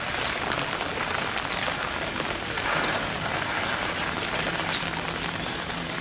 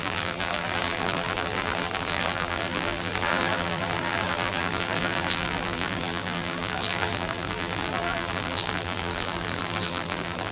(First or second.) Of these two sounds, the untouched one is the first